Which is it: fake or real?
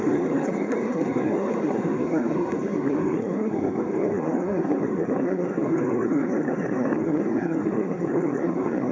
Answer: fake